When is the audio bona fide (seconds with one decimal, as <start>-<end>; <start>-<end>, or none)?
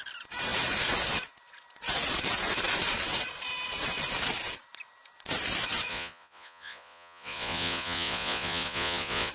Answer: 0.0-5.9